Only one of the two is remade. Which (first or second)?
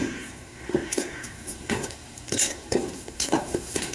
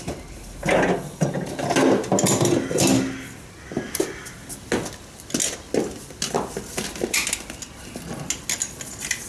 first